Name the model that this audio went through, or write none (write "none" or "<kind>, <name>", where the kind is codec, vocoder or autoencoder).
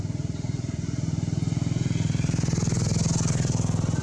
none